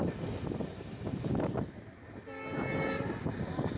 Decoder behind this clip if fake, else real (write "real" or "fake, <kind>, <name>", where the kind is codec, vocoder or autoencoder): real